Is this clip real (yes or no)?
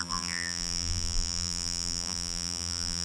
no